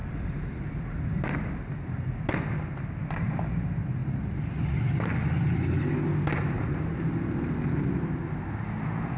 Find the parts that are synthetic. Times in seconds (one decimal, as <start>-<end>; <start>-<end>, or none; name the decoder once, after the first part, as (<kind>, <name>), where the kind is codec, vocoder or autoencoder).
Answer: 0.0-1.2 (vocoder, BigVGAN v2)